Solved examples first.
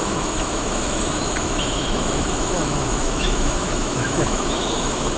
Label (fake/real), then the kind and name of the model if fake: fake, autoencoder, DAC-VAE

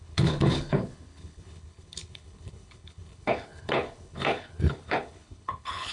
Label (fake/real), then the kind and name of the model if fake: fake, codec, HILCodec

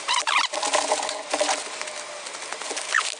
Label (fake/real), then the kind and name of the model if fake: real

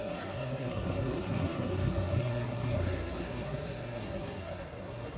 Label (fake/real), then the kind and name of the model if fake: fake, codec, SNAC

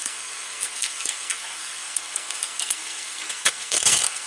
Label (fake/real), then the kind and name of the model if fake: fake, codec, SNAC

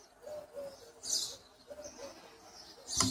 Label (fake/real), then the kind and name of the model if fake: real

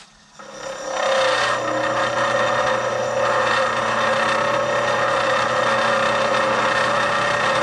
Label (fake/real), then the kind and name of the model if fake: real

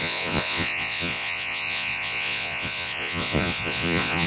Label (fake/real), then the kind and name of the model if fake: fake, vocoder, Vocos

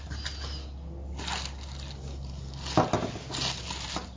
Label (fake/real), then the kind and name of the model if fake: real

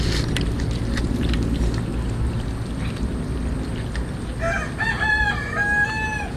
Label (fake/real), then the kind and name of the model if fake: real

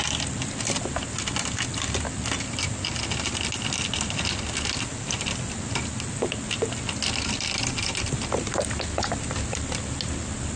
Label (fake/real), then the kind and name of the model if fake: real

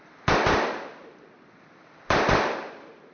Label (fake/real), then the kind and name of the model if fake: real